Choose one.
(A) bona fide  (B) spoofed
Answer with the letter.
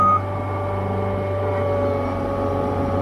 A